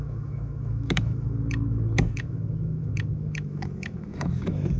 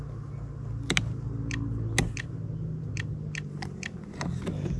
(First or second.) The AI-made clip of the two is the first